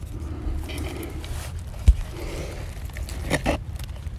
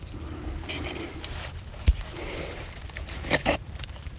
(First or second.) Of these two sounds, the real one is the first